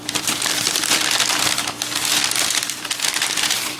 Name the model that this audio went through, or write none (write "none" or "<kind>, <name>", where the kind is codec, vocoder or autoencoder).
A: vocoder, BigVGAN v2